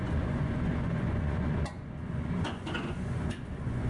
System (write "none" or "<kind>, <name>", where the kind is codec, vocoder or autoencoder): vocoder, Vocos